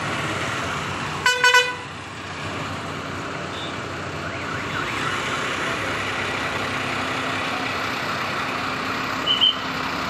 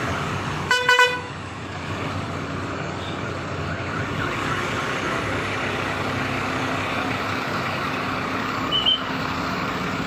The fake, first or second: second